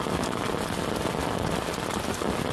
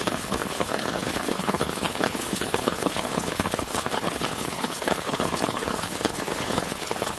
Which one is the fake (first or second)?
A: second